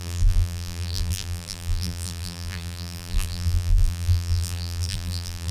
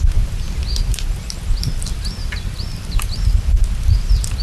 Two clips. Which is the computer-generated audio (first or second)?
first